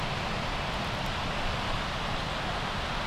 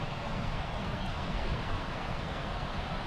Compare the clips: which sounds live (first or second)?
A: first